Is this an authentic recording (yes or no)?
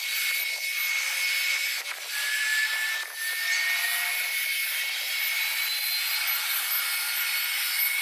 yes